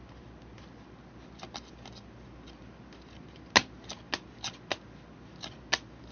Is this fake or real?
real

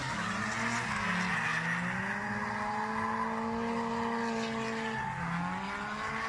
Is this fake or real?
real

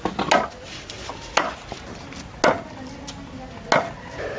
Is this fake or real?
real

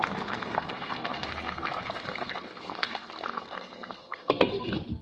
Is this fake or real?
fake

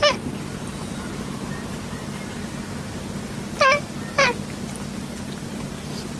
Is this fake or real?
real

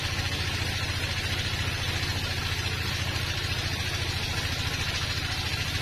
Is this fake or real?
real